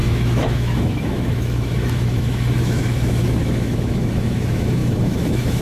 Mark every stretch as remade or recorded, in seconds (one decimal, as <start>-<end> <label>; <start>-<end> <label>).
0.0-5.6 remade